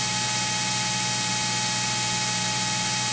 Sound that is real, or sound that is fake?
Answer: real